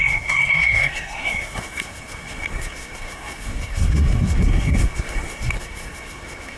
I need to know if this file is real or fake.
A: fake